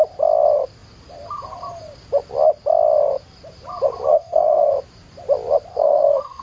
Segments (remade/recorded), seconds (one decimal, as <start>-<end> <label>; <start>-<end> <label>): 0.0-4.1 recorded; 4.1-4.7 remade; 4.7-5.7 recorded; 5.7-6.4 remade